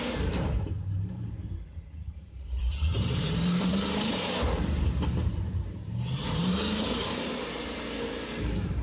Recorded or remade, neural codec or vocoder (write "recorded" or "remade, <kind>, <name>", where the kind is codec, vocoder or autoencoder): remade, vocoder, BigVGAN v2